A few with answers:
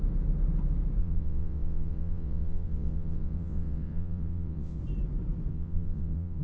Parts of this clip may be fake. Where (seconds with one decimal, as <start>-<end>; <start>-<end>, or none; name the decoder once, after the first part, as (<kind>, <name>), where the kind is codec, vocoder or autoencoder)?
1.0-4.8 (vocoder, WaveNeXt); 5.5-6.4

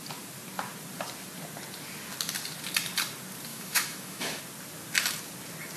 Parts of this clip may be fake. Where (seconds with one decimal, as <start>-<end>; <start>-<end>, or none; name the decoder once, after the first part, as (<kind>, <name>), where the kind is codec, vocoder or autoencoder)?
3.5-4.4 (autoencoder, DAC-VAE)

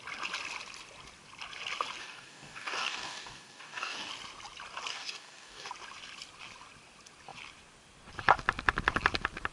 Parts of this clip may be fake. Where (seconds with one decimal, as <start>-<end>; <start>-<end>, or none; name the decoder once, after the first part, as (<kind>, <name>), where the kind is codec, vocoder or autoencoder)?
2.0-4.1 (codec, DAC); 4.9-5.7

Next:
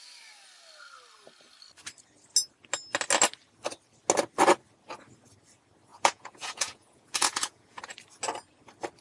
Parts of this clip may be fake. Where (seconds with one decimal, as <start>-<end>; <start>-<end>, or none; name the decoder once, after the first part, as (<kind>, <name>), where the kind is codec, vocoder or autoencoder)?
5.9-7.8 (vocoder, Vocos)

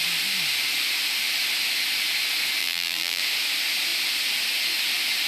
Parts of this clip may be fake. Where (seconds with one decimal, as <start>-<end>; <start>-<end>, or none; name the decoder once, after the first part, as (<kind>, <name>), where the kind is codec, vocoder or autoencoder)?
2.6-3.2 (vocoder, BigVGAN v2)